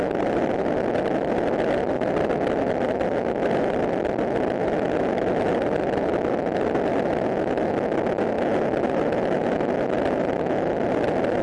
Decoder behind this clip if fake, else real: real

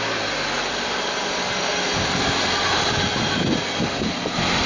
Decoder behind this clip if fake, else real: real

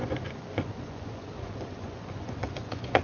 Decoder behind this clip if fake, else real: fake, vocoder, Vocos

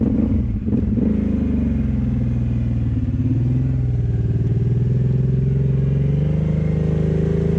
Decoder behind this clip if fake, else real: real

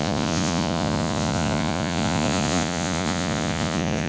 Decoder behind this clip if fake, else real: fake, vocoder, Vocos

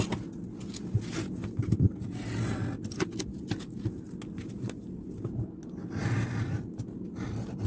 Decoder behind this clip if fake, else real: real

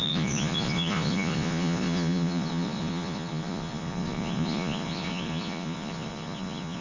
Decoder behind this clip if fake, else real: fake, vocoder, Vocos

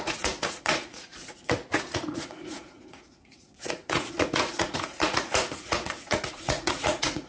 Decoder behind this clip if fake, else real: fake, vocoder, Vocos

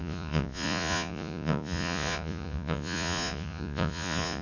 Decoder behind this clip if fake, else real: fake, vocoder, Vocos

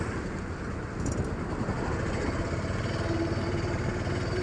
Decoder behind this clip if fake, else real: real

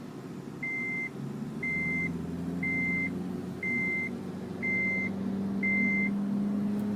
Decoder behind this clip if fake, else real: real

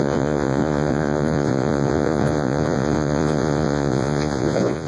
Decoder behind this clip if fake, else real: fake, vocoder, Vocos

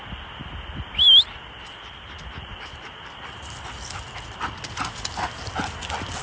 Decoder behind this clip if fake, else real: real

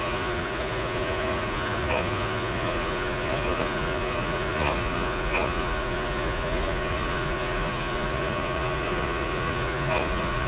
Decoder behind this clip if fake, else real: fake, vocoder, Vocos